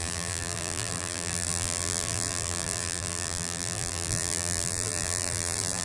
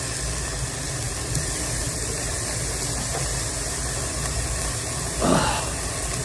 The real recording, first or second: second